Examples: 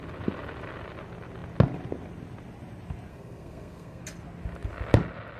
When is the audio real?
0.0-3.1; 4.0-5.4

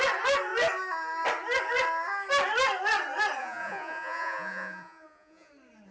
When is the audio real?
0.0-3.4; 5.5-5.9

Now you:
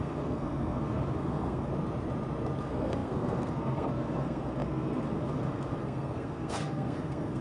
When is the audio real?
1.7-2.6

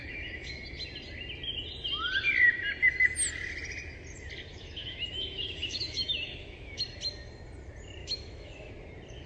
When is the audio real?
0.6-4.5; 6.8-8.0; 8.7-9.3

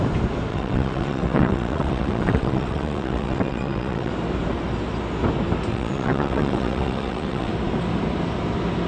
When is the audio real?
0.0-0.5; 4.1-5.7; 7.5-8.9

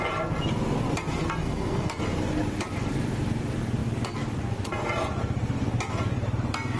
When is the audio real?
0.0-1.4; 2.0-6.8